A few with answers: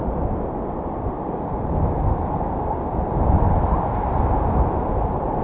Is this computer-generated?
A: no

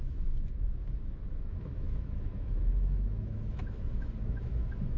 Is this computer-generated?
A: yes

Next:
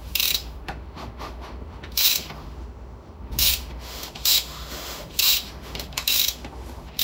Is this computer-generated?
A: yes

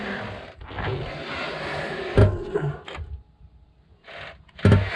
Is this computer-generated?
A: no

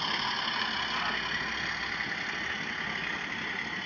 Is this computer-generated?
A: no